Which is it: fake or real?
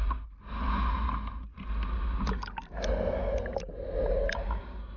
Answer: real